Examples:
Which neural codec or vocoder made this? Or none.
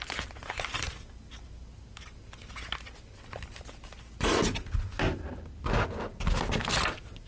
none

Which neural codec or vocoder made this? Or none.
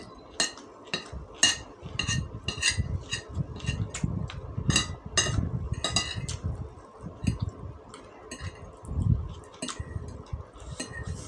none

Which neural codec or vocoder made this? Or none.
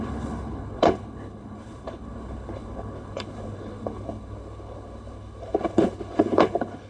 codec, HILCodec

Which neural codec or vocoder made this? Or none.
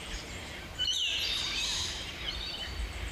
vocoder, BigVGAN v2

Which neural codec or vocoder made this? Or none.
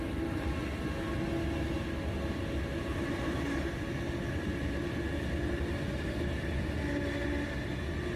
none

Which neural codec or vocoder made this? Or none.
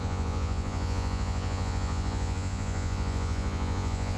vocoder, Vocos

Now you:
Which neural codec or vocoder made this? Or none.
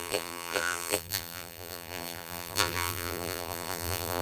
vocoder, BigVGAN v2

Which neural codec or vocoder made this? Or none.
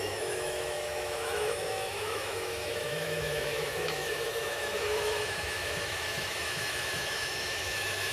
autoencoder, DAC-VAE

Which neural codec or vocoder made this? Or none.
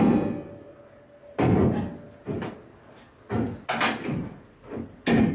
none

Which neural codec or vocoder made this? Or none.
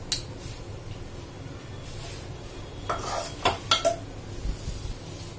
none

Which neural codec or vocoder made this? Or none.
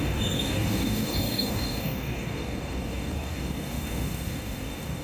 codec, DAC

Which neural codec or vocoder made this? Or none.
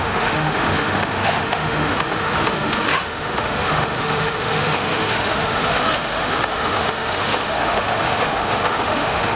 autoencoder, DAC-VAE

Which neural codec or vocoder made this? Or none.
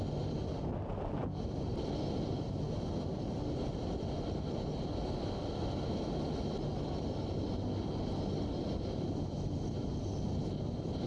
none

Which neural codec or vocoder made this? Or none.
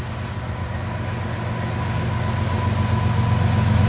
none